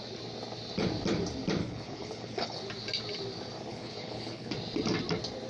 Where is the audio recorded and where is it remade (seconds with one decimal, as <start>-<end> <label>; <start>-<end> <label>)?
0.0-1.6 recorded; 1.6-2.6 remade; 2.6-3.7 recorded; 3.7-4.5 remade; 4.5-5.5 recorded